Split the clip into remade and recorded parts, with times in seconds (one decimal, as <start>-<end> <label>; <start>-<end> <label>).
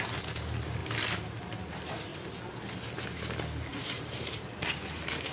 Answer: 0.0-2.1 recorded; 2.1-2.6 remade; 2.6-3.7 recorded; 3.7-4.5 remade; 4.5-5.3 recorded